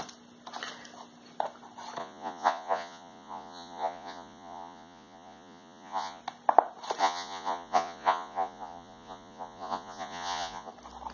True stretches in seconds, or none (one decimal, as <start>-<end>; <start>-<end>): 0.0-2.0; 6.2-7.0; 10.7-11.1